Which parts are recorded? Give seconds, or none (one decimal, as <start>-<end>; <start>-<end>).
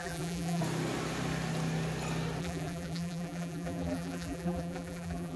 0.6-2.4